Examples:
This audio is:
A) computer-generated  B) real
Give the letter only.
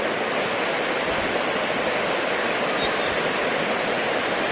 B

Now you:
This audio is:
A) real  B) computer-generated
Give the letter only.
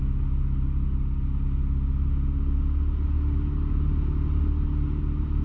A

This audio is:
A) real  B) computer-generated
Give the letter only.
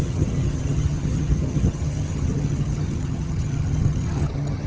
B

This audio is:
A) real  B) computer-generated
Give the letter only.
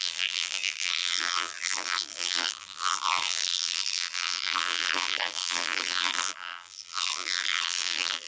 B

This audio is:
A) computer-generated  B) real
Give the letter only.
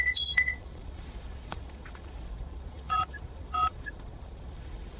A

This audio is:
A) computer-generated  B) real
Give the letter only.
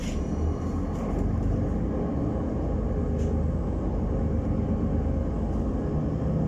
B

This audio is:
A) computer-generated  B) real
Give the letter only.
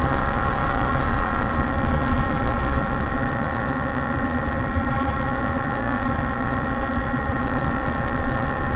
A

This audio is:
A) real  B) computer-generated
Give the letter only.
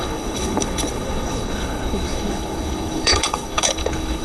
B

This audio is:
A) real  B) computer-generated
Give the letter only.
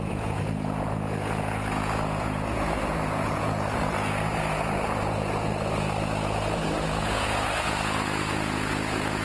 B